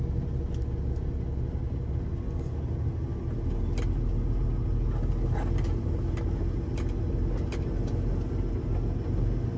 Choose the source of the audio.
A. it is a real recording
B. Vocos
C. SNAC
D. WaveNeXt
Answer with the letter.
A